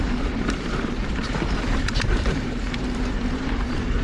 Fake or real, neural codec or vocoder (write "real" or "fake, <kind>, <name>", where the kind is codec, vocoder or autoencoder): fake, vocoder, BigVGAN v2